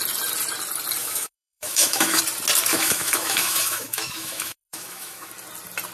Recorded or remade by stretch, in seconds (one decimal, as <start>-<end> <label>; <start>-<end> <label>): 0.0-1.0 recorded; 1.0-2.2 remade; 2.2-2.7 recorded; 2.7-5.3 remade; 5.3-5.9 recorded